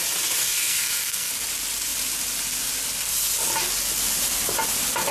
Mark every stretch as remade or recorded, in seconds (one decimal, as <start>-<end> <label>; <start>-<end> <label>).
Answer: 0.0-0.4 recorded; 0.4-1.3 remade; 1.3-5.1 recorded